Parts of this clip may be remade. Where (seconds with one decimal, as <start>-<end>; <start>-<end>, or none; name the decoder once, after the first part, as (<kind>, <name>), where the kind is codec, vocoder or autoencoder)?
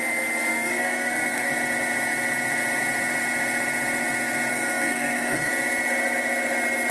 0.5-1.5 (codec, SNAC); 4.5-5.5